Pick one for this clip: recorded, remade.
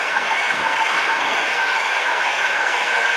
remade